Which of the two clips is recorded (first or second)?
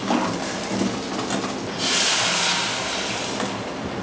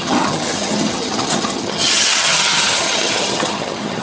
first